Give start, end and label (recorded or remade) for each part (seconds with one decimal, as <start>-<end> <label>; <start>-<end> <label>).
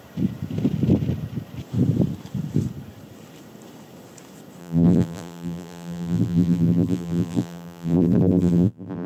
0.0-4.6 recorded; 4.6-9.1 remade